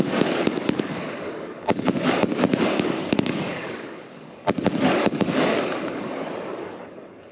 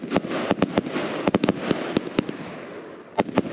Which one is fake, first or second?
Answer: first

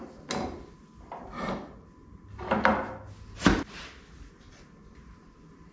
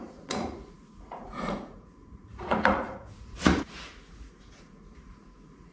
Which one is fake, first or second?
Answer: second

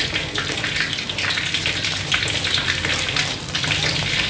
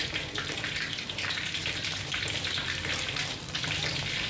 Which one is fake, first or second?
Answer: second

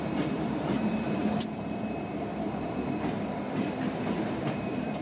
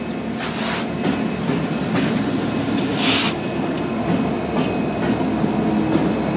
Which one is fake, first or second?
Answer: first